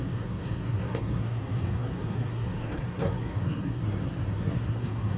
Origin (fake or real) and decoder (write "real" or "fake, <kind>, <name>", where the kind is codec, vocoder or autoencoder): fake, codec, SNAC